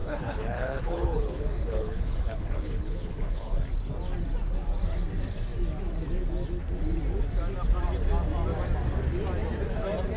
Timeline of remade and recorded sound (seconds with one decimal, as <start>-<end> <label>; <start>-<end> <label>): 0.0-3.5 remade; 3.5-10.2 recorded